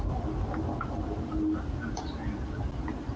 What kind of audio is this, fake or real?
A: real